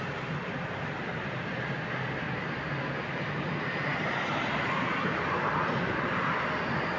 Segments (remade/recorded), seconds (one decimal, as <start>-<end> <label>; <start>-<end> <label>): 0.0-7.0 recorded